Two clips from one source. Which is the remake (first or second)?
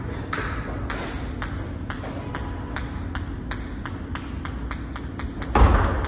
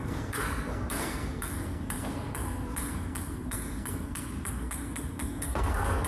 second